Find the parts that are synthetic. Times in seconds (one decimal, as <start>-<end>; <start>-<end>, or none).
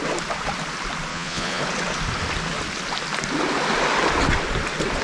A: 1.1-1.6